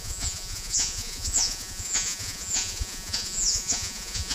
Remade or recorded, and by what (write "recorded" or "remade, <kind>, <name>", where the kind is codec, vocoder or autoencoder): remade, vocoder, Vocos